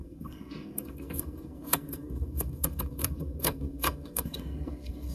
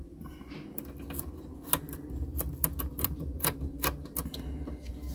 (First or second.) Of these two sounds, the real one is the second